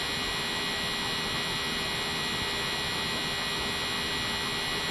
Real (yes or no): yes